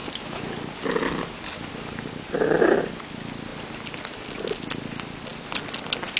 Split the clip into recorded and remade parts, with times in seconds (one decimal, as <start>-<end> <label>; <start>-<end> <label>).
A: 0.0-6.2 recorded